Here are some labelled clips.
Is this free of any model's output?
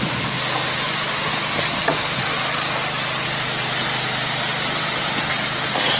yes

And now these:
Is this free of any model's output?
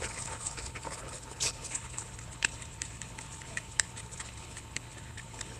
no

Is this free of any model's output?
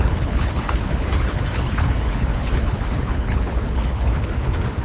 no